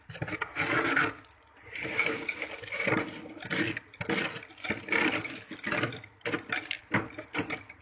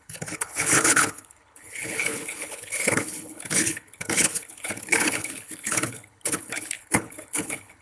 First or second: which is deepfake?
second